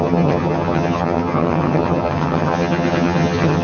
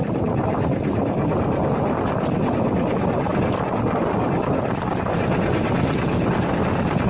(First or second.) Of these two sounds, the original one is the second